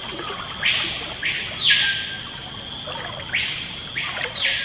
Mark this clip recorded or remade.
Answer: recorded